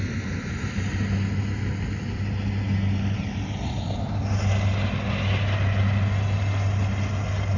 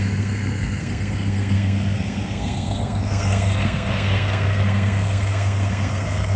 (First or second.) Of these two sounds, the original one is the first